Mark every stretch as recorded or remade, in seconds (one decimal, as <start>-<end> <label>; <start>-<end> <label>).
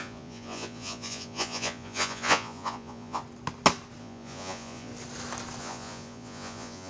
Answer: 0.0-3.2 remade; 3.2-4.0 recorded; 4.0-4.9 remade; 4.9-5.6 recorded; 5.6-6.9 remade